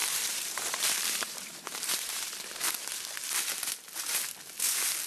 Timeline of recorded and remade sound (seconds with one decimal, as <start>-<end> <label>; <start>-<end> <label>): 0.0-2.3 remade; 2.3-5.1 recorded